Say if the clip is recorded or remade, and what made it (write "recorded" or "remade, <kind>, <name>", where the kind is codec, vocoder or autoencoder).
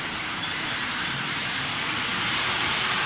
remade, vocoder, BigVGAN v2